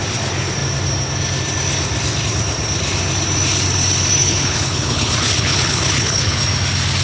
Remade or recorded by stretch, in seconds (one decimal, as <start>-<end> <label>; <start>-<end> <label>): 0.0-4.2 recorded; 4.2-6.4 remade; 6.4-7.0 recorded